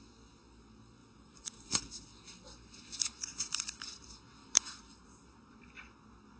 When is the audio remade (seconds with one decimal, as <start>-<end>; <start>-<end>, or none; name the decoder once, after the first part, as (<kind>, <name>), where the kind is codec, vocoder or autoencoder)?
1.0-1.9 (vocoder, BigVGAN v2); 4.4-5.5